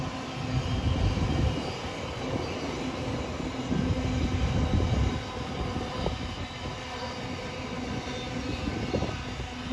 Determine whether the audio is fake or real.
real